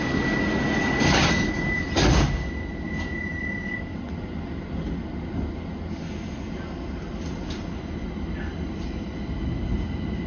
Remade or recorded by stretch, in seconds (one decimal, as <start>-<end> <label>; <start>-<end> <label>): 0.0-3.3 recorded; 3.3-3.8 remade; 3.8-10.3 recorded